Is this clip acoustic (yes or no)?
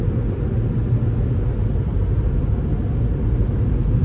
yes